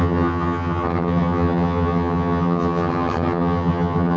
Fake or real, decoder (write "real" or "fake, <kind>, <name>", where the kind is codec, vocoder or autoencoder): fake, vocoder, HiFi-GAN